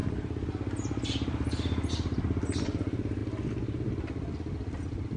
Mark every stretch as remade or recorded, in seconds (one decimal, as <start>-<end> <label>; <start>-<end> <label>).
0.0-5.2 recorded